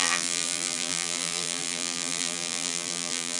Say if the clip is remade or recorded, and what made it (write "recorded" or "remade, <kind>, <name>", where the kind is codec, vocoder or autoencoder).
remade, vocoder, BigVGAN v2